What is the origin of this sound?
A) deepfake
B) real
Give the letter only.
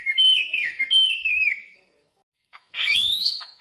A